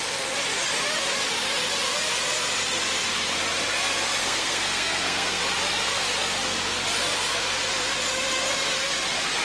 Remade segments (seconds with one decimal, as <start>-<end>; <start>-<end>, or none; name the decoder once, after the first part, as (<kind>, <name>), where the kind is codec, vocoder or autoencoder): 4.2-5.4 (codec, SNAC)